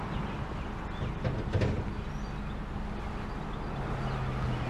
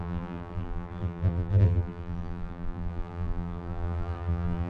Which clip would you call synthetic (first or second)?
second